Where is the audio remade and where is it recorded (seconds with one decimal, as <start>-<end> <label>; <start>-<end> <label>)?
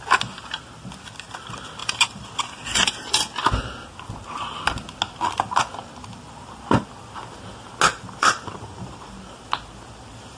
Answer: 0.0-1.8 recorded; 1.8-2.4 remade; 2.4-5.8 recorded; 5.8-6.8 remade; 6.8-7.9 recorded; 7.9-9.4 remade; 9.4-10.4 recorded